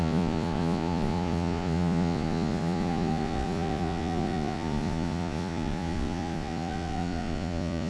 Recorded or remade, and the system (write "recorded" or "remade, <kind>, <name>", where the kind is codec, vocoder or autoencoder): remade, vocoder, Vocos